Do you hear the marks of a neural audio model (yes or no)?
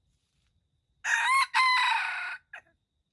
no